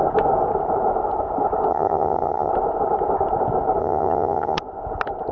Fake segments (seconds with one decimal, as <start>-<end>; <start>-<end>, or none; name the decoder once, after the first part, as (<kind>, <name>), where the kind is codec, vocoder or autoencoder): 1.7-2.5 (vocoder, HiFi-GAN); 3.8-4.6